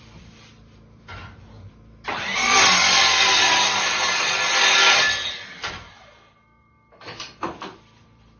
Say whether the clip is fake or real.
fake